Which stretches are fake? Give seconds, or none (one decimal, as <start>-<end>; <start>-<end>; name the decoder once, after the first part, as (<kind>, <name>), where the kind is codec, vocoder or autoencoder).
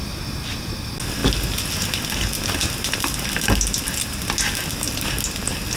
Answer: none